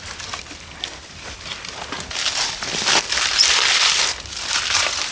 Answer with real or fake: real